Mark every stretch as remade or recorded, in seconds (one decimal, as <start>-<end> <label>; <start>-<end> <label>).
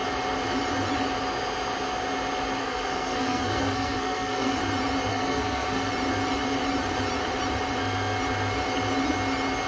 0.0-2.6 recorded; 2.6-4.6 remade; 4.6-5.1 recorded; 5.1-5.9 remade; 5.9-9.7 recorded